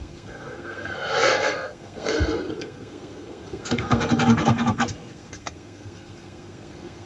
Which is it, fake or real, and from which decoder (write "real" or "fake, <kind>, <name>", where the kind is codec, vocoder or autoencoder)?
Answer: fake, codec, SNAC